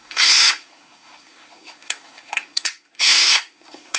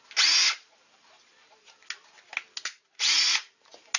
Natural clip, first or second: second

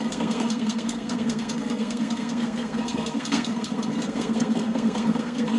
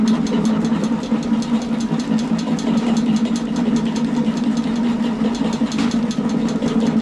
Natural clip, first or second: second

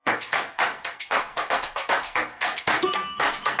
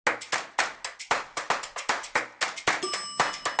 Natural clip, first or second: second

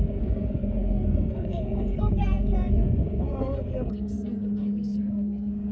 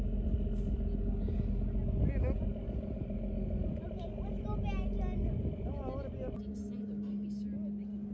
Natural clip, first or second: second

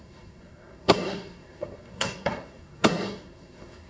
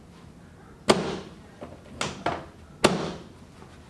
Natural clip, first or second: second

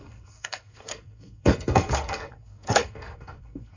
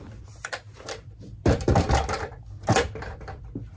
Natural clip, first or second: second